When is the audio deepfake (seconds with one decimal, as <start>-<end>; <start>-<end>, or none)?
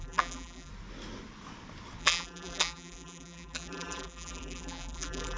0.0-0.7; 2.0-5.4